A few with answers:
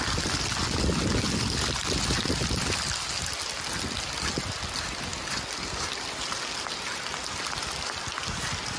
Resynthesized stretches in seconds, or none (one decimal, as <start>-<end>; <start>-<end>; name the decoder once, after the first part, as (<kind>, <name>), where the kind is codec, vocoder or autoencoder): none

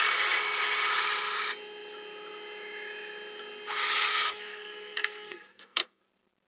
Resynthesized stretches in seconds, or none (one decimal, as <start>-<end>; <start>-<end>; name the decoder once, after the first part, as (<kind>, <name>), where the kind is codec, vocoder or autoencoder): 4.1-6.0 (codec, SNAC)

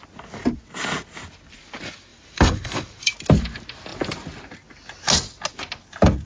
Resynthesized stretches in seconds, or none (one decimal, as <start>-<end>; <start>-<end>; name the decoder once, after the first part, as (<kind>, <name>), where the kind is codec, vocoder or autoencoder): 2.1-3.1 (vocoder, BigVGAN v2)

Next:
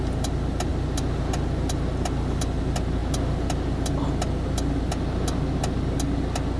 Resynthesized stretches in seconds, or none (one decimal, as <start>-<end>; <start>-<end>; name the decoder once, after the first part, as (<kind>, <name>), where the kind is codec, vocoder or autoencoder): none

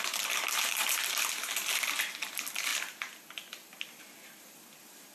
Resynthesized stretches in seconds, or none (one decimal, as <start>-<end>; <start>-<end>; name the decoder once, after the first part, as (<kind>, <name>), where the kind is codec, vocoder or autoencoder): 0.8-1.4 (vocoder, BigVGAN v2); 2.7-4.0

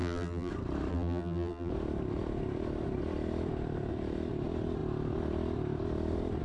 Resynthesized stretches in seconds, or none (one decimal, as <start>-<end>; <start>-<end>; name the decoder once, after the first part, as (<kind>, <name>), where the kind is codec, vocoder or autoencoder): 0.0-0.5 (vocoder, BigVGAN v2); 0.9-1.7